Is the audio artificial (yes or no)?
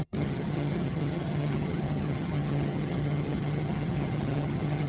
yes